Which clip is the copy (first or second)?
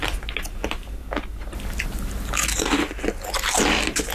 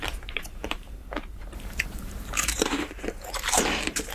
second